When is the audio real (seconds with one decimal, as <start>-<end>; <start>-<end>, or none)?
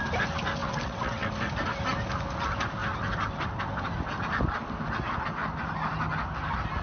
0.0-0.6; 1.3-6.8